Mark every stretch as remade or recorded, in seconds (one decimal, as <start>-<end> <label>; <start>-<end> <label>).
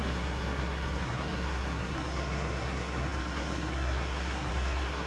0.0-5.1 remade